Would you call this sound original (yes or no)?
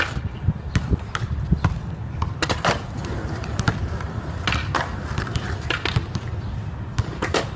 yes